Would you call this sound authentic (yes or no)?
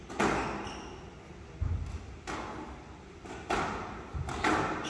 yes